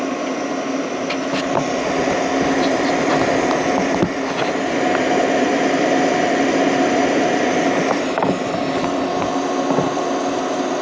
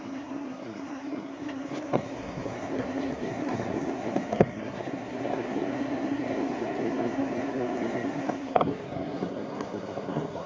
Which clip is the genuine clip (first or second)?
first